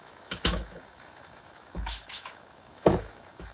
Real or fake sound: fake